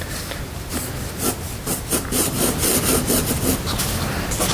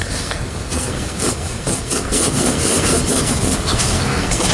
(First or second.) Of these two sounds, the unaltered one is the first